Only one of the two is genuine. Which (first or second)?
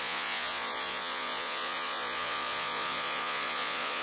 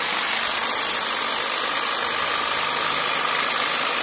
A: second